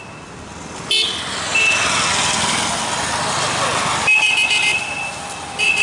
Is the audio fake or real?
real